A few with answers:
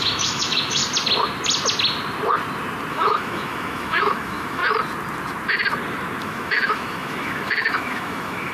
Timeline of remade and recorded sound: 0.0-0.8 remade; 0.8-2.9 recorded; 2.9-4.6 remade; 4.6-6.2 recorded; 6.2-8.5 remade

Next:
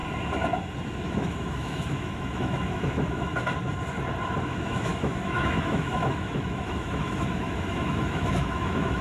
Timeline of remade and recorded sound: 0.0-1.0 recorded; 1.0-3.3 remade; 3.3-4.4 recorded; 4.4-9.0 remade

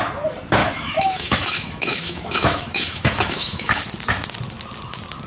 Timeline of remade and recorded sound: 0.0-0.6 recorded; 0.6-3.8 remade; 3.8-5.3 recorded

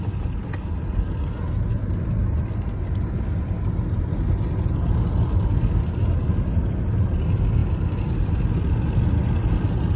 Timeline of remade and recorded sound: 0.0-10.0 recorded

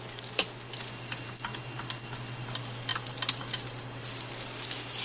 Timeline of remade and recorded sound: 0.0-5.0 recorded

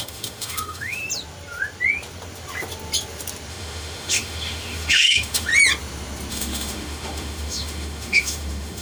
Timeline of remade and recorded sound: 0.0-1.0 remade; 1.0-3.5 recorded; 3.5-5.5 remade; 5.5-6.3 recorded; 6.3-8.8 remade

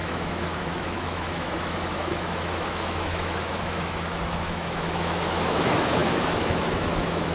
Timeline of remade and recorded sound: 0.0-7.3 remade

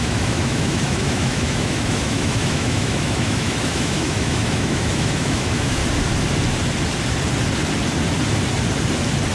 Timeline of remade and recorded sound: 0.0-5.8 remade; 5.8-9.3 recorded